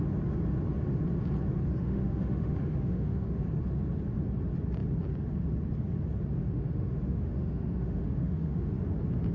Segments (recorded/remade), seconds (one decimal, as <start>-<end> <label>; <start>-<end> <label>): 0.0-1.7 recorded; 1.7-3.4 remade; 3.4-6.4 recorded; 6.4-8.7 remade; 8.7-9.3 recorded